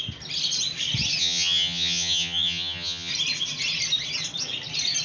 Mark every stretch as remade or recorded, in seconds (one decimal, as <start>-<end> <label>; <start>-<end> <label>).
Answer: 0.0-1.2 recorded; 1.2-3.1 remade; 3.1-5.0 recorded